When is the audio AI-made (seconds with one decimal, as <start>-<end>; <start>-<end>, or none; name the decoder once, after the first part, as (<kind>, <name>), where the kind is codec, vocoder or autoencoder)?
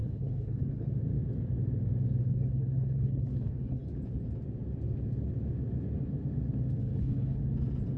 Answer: 0.0-0.9 (codec, HILCodec); 2.2-3.8; 6.8-7.4